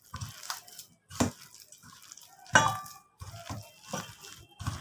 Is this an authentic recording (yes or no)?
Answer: yes